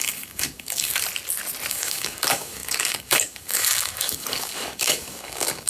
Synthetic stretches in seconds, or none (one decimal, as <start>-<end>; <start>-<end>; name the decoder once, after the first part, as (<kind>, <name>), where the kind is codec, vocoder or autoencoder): 0.0-0.9 (codec, DAC); 1.7-5.7